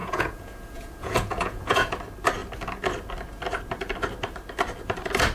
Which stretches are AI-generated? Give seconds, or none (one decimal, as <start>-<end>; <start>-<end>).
0.0-1.9